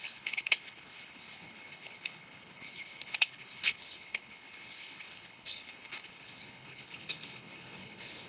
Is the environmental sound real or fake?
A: fake